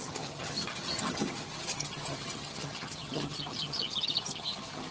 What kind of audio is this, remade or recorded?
remade